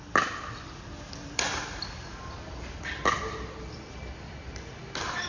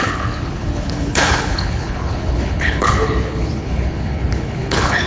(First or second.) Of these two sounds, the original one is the first